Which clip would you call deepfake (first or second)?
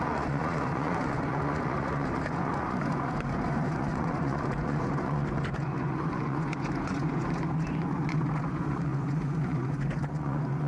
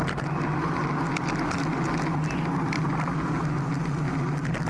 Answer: first